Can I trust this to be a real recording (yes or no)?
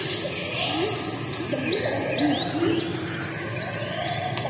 yes